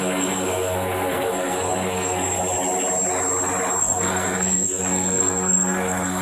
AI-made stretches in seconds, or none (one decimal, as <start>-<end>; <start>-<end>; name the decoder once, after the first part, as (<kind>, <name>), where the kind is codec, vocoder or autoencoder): 0.0-2.4 (codec, SNAC); 3.8-6.2